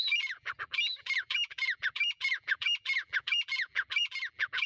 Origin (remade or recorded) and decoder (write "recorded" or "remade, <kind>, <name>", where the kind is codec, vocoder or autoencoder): remade, vocoder, BigVGAN v2